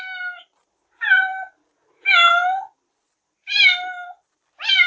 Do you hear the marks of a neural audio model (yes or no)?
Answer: no